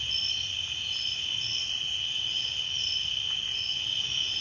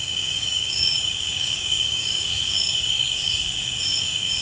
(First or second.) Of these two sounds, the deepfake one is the second